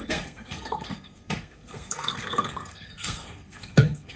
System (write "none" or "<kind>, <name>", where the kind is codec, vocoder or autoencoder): codec, SNAC